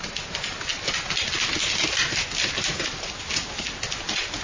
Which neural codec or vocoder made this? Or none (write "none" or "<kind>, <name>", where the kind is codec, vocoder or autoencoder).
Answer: none